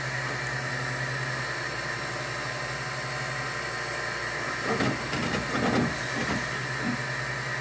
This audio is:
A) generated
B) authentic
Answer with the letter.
B